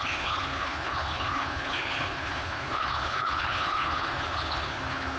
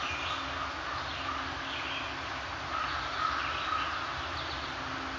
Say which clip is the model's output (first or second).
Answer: first